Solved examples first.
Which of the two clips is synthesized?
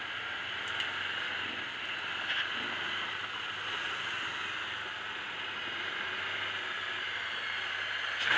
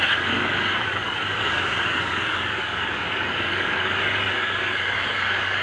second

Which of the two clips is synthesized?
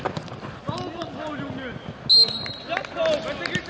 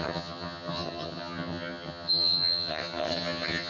second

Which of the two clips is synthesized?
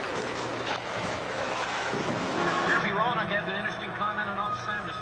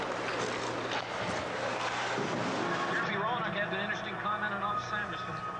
first